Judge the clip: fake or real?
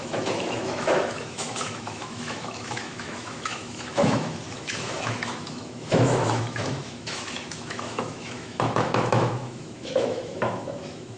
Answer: fake